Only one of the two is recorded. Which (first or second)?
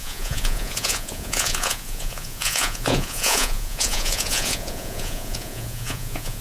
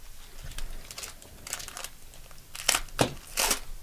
second